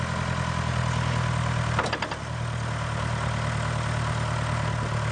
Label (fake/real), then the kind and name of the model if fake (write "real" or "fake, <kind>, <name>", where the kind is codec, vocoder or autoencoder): real